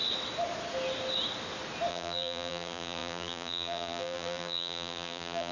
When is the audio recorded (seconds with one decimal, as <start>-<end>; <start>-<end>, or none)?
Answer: 0.0-1.9